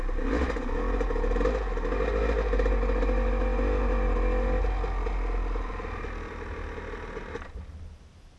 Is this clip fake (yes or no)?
no